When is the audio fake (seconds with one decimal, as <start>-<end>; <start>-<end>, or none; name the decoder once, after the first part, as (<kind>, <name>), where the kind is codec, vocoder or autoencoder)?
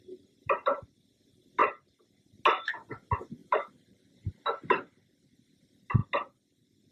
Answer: 3.4-4.1 (vocoder, BigVGAN v2)